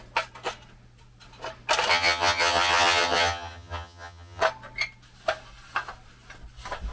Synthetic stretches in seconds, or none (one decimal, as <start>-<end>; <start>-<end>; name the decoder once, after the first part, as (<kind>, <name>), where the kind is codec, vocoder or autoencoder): 1.9-4.4 (vocoder, HiFi-GAN)